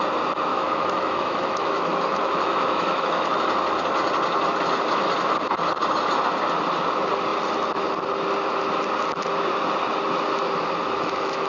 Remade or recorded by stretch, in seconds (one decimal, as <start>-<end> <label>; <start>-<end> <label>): 0.0-0.5 recorded; 0.5-3.4 remade; 3.4-10.8 recorded; 10.8-11.5 remade